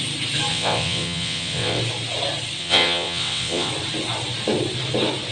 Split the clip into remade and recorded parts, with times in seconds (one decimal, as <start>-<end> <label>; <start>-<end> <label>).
0.0-0.5 recorded; 0.5-1.8 remade; 1.8-2.6 recorded; 2.6-3.7 remade; 3.7-5.3 recorded